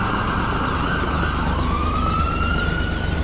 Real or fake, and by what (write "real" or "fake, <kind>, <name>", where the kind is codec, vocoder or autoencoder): real